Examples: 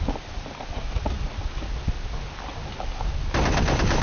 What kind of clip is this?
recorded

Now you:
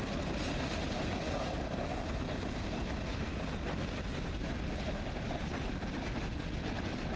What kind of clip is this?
recorded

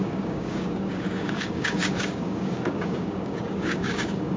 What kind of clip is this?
remade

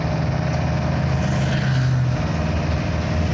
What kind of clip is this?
recorded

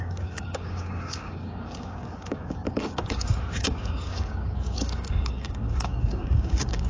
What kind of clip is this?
remade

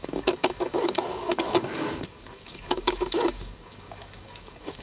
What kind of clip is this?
remade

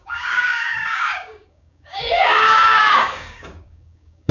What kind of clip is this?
remade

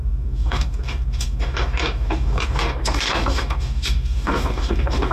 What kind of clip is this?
remade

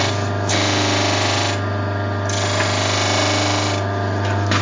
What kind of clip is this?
recorded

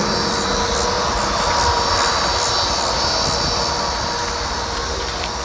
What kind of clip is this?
recorded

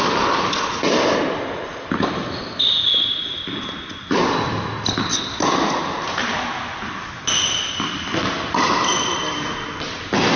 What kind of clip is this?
recorded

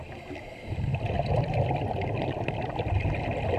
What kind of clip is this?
recorded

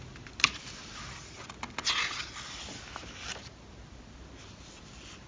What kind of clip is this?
recorded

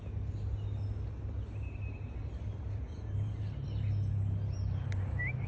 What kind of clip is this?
recorded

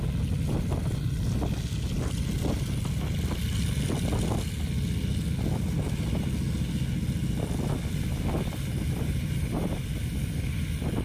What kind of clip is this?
recorded